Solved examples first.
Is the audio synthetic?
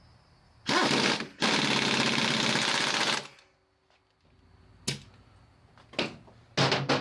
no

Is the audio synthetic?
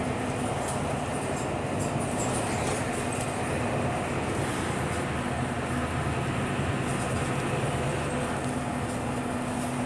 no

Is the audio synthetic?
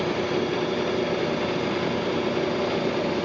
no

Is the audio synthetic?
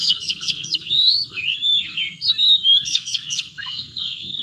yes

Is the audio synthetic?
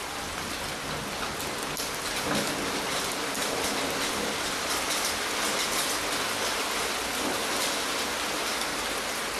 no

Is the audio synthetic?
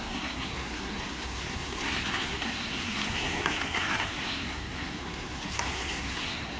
yes